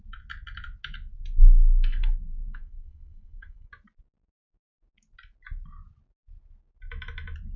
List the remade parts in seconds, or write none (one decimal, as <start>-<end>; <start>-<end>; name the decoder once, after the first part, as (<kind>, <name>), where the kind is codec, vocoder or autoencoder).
1.4-3.7 (codec, SNAC)